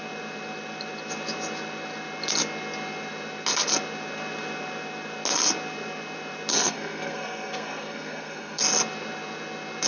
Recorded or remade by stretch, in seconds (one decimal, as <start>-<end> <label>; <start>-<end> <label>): 0.0-6.5 recorded; 6.5-8.6 remade; 8.6-9.9 recorded